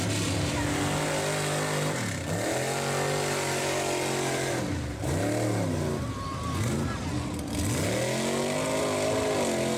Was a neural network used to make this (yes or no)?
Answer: no